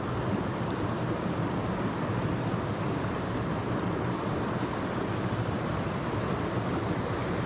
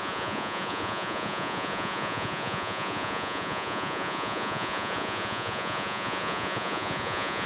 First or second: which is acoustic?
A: first